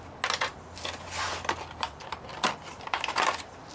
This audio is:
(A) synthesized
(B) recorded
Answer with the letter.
B